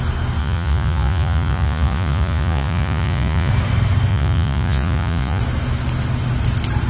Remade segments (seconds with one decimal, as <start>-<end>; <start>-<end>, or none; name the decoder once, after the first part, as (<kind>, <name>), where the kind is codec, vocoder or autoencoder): 0.4-3.5 (vocoder, Vocos); 4.1-5.4